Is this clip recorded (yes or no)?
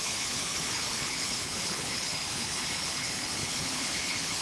no